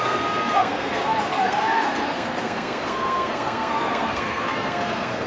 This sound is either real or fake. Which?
fake